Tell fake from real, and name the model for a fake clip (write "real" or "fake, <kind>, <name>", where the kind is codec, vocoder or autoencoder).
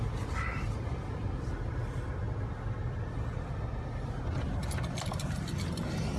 real